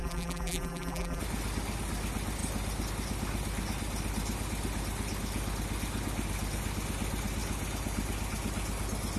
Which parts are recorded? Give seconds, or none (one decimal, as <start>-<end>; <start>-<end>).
1.2-9.2